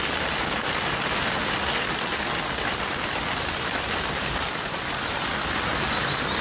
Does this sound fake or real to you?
real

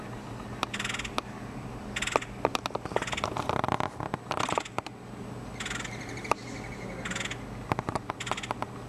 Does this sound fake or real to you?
real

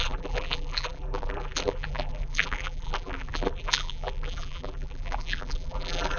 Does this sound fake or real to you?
fake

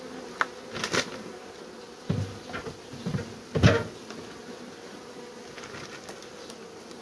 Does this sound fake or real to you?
real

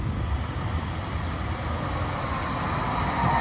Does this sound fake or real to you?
real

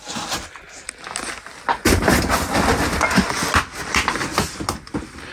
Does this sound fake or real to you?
real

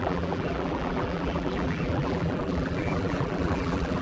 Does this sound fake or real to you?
fake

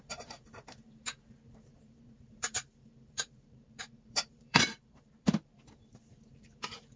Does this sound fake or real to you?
fake